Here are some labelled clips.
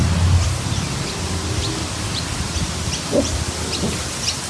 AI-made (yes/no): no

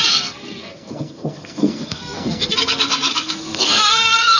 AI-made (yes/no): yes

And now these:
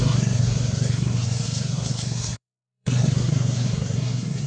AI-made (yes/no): yes